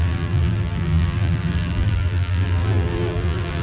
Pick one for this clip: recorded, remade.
remade